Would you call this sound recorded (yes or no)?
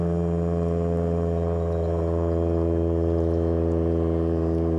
no